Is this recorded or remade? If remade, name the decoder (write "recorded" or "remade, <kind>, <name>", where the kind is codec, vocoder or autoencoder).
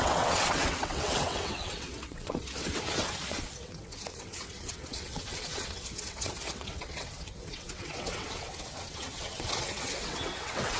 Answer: remade, vocoder, WaveNeXt